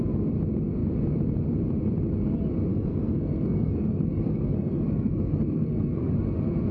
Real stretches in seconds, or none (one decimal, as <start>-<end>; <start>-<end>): 0.0-2.7; 6.1-6.7